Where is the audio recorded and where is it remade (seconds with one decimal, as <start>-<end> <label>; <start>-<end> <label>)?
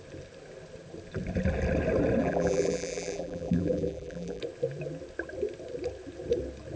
0.0-2.2 recorded; 2.2-4.4 remade; 4.4-6.8 recorded